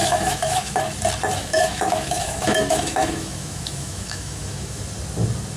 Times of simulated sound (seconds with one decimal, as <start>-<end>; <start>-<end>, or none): 0.0-0.8; 1.4-4.8